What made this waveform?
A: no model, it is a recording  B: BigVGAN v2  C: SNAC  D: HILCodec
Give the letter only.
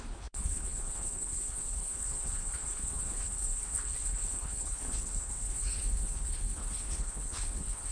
D